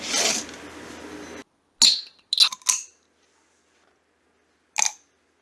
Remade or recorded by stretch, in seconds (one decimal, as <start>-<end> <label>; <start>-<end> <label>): 0.0-5.4 recorded